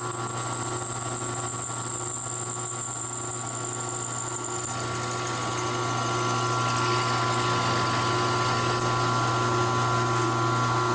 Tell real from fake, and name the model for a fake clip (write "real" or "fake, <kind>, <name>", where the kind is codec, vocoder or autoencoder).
real